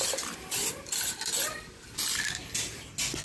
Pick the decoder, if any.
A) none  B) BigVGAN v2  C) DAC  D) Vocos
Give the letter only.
A